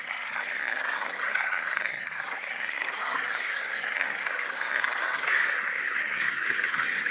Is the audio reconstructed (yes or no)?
yes